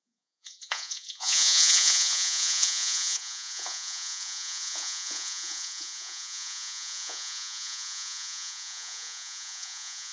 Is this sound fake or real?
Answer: fake